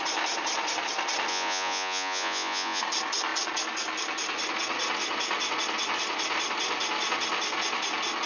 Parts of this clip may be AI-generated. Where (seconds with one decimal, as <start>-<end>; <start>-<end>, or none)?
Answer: 1.3-2.8